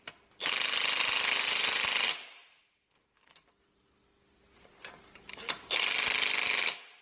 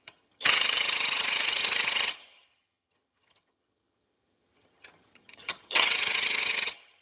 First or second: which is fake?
second